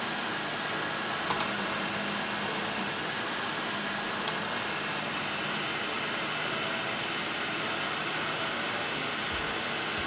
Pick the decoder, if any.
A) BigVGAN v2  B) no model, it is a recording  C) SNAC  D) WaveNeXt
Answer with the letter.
B